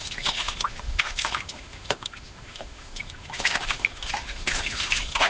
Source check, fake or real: fake